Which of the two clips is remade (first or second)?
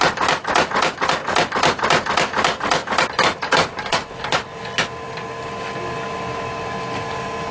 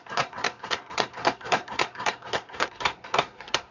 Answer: second